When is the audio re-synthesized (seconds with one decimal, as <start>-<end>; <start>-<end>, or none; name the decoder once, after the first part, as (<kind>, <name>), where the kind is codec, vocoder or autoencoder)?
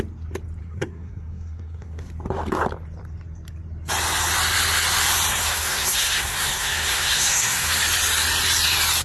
0.6-2.1 (codec, SNAC); 5.3-7.8